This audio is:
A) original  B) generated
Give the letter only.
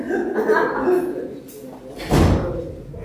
A